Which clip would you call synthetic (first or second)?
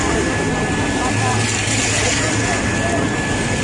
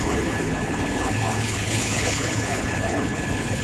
second